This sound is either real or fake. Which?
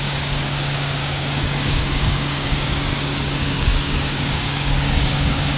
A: fake